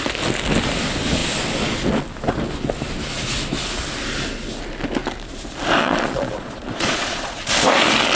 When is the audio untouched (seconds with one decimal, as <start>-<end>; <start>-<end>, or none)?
0.0-5.8; 7.4-8.2